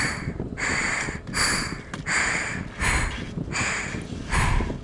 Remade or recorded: recorded